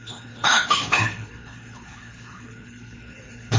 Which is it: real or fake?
fake